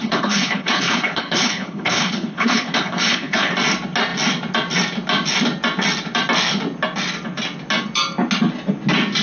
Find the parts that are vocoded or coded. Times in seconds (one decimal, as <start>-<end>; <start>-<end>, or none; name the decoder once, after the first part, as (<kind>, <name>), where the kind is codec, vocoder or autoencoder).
0.0-3.5 (codec, HILCodec)